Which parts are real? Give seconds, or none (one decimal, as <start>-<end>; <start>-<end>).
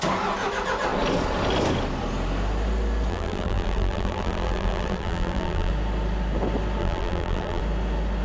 0.0-3.1; 5.7-6.8; 7.6-8.2